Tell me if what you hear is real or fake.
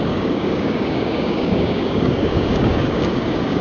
fake